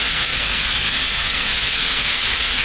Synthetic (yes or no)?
yes